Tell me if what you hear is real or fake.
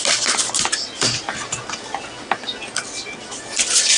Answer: real